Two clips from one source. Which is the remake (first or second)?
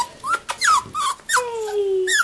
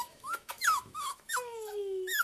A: second